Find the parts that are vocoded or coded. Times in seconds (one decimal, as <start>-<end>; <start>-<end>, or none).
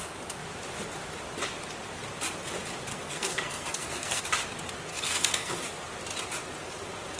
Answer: 2.9-4.2; 4.9-5.5